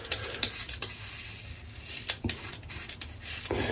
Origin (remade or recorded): recorded